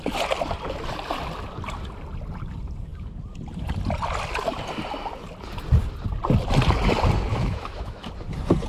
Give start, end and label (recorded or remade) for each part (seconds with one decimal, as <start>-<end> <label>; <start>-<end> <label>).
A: 0.0-7.3 recorded; 7.3-8.1 remade; 8.1-8.7 recorded